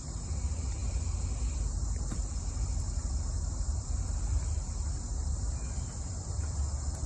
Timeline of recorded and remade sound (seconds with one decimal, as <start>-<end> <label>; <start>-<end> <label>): 0.0-7.1 recorded